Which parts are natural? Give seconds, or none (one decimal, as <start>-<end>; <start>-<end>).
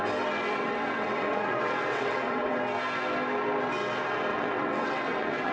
0.0-0.5; 2.6-4.3